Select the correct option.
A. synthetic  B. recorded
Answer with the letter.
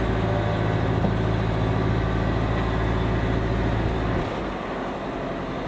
B